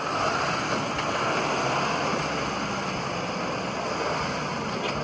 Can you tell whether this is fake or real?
real